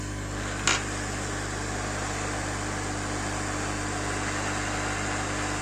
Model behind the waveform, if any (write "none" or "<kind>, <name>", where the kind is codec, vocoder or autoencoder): none